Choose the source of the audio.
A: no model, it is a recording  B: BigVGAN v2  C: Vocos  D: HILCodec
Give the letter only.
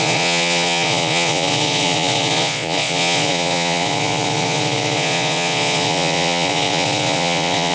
C